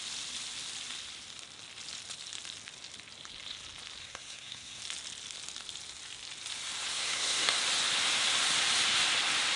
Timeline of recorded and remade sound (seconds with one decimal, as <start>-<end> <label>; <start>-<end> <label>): 0.0-4.0 recorded; 4.0-4.8 remade; 4.8-6.9 recorded; 6.9-7.6 remade; 7.6-9.6 recorded